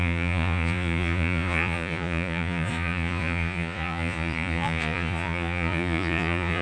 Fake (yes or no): yes